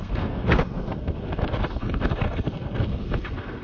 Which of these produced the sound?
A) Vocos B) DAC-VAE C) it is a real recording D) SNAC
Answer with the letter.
D